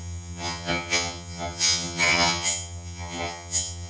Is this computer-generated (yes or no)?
yes